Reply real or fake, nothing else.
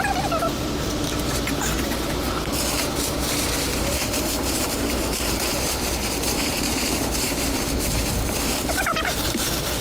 fake